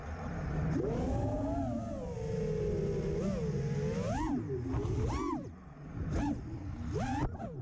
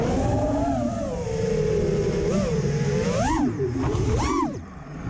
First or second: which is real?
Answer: first